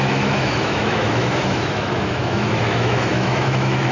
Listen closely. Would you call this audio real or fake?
fake